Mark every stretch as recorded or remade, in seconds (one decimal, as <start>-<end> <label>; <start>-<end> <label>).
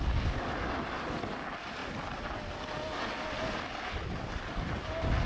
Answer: 0.0-5.3 recorded